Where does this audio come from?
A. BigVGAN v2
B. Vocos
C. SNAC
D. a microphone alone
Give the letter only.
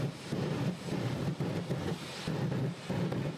A